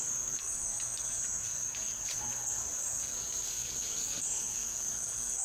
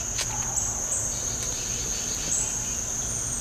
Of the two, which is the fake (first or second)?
first